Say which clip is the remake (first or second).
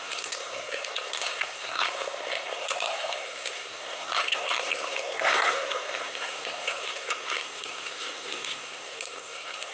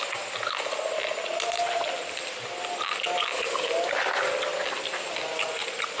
first